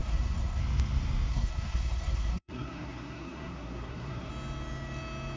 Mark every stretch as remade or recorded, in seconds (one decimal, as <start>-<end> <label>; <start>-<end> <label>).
0.0-0.6 remade; 0.6-1.3 recorded; 1.3-4.3 remade; 4.3-5.4 recorded